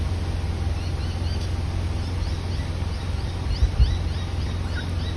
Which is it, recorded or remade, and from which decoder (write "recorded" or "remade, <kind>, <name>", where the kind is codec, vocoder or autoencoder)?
recorded